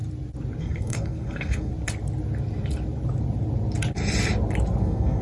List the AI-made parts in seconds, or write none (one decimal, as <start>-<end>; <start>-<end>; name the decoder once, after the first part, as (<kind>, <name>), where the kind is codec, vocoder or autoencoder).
0.6-1.7 (codec, SNAC); 4.8-5.2